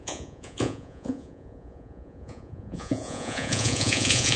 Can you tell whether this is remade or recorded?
remade